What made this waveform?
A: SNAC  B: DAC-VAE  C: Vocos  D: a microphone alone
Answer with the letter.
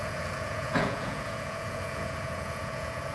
C